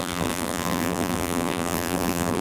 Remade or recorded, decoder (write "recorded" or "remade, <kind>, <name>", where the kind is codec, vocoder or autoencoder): remade, vocoder, BigVGAN v2